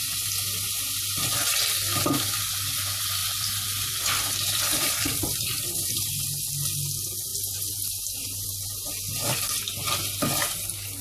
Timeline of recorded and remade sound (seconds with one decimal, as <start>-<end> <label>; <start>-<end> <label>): 0.0-3.2 recorded; 3.2-6.5 remade; 6.5-7.3 recorded; 7.3-8.9 remade; 8.9-11.0 recorded